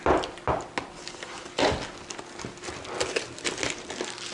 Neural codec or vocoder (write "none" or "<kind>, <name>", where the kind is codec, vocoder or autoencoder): none